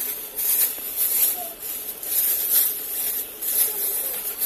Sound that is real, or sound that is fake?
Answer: fake